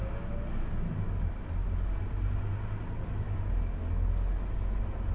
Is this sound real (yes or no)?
yes